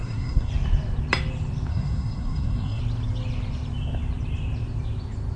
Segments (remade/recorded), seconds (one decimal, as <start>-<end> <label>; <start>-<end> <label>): 0.0-0.5 remade; 0.5-1.7 recorded; 1.7-2.8 remade; 2.8-5.4 recorded